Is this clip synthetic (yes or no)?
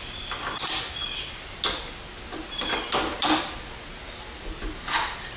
no